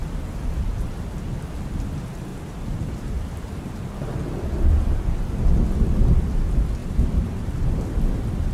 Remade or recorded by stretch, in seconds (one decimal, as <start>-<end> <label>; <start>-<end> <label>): 0.0-2.3 recorded; 2.3-3.7 remade; 3.7-6.8 recorded; 6.8-7.5 remade; 7.5-8.5 recorded